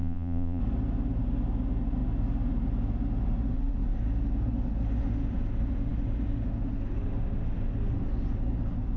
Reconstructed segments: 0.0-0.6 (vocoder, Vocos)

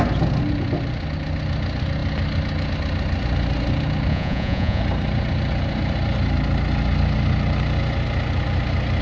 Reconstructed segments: 4.1-4.8 (vocoder, Vocos)